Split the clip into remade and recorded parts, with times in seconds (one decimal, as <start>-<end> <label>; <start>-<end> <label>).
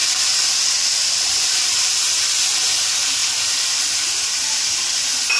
0.0-2.2 remade; 2.2-3.2 recorded; 3.2-3.8 remade; 3.8-5.4 recorded